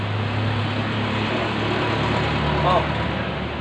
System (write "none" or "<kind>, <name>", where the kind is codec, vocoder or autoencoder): none